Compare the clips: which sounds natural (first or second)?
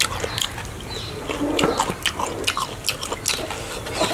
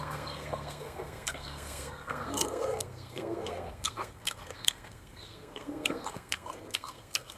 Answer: first